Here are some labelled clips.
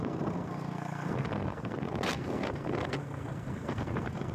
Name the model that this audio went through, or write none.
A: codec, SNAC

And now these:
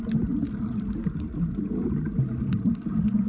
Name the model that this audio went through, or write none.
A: none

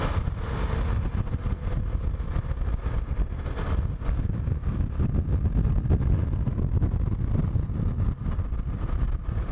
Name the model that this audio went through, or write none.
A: none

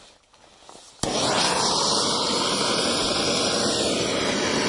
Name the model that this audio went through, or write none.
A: none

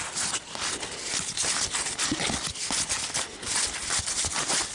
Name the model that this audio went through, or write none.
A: none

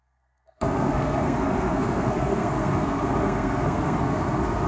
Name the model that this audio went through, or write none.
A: codec, SNAC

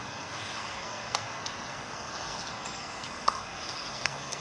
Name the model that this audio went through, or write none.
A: codec, SNAC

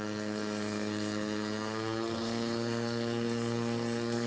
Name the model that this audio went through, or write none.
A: codec, SNAC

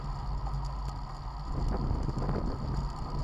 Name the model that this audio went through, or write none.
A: none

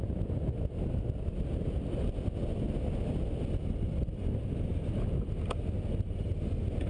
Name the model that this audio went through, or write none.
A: none